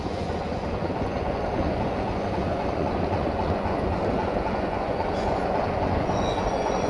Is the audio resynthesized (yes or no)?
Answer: yes